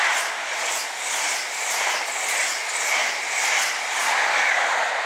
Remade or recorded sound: recorded